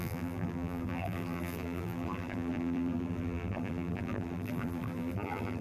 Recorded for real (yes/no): no